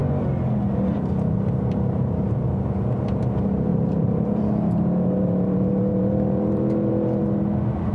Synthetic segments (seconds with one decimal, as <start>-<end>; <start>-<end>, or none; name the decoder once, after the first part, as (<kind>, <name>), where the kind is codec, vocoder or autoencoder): 3.7-7.2 (vocoder, BigVGAN v2)